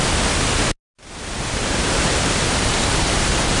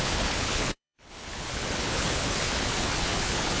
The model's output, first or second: second